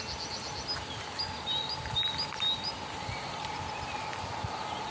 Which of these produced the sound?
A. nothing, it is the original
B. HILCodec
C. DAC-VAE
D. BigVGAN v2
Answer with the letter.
A